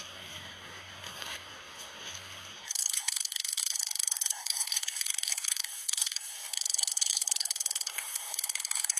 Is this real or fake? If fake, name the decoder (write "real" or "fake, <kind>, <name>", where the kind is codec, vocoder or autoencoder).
fake, codec, SNAC